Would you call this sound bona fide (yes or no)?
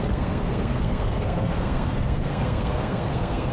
no